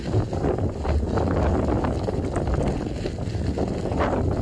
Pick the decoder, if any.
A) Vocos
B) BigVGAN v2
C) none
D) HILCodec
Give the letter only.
C